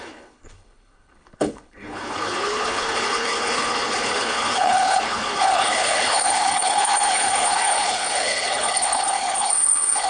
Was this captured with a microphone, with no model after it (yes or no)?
no